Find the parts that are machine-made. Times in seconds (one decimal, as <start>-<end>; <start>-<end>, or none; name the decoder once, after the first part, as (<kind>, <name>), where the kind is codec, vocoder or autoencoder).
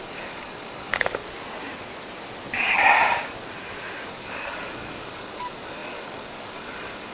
0.0-1.2 (codec, DAC); 4.1-7.1